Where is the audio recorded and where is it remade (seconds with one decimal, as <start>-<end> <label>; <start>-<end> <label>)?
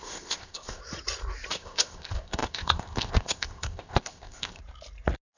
0.0-0.8 remade; 0.8-1.5 recorded; 1.5-4.6 remade; 4.6-5.4 recorded